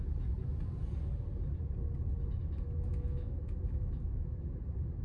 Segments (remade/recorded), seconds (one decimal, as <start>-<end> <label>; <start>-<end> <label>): 0.0-2.4 recorded; 2.4-4.6 remade; 4.6-5.0 recorded